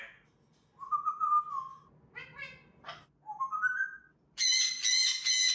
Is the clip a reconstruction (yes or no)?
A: no